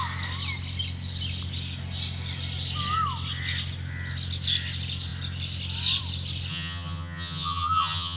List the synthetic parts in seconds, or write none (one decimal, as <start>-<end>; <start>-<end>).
6.5-8.2